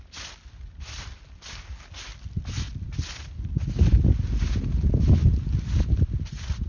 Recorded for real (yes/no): yes